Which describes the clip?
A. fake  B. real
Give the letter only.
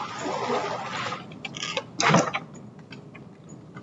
B